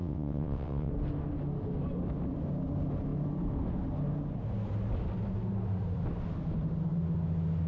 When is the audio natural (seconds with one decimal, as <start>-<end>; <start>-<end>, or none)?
0.9-7.7